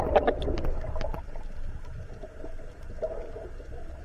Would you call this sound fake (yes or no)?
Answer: no